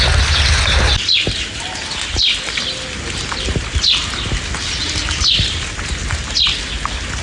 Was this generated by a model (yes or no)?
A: no